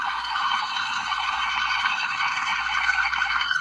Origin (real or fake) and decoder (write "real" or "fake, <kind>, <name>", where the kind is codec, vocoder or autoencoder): fake, codec, SNAC